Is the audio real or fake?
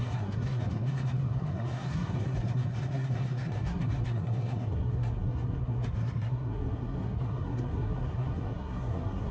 fake